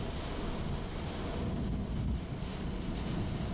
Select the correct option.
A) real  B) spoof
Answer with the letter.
A